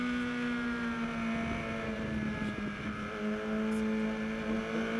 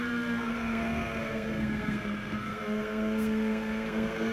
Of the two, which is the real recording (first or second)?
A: first